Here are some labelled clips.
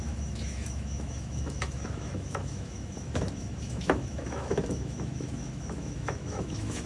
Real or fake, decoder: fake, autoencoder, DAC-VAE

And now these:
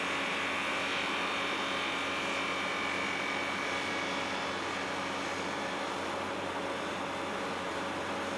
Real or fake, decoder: real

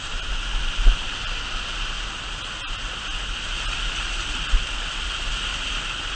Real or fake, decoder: real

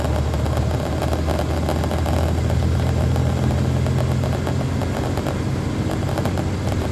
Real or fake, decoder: real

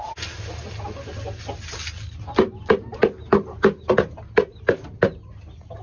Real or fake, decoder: real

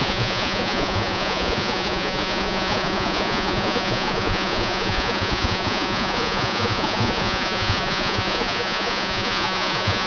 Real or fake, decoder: fake, vocoder, Vocos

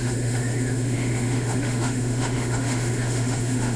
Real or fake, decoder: fake, autoencoder, DAC-VAE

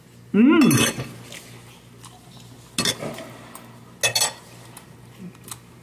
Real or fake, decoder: real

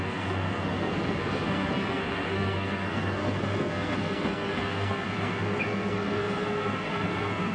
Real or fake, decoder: fake, codec, SNAC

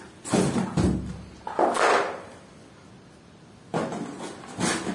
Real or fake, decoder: real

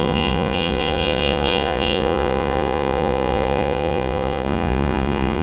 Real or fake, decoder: fake, vocoder, Vocos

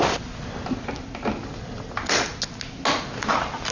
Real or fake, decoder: real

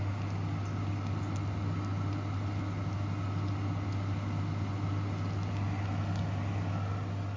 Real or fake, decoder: real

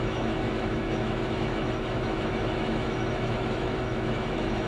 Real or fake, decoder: fake, autoencoder, DAC-VAE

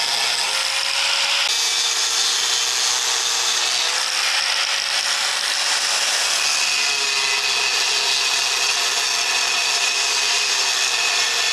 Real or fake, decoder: real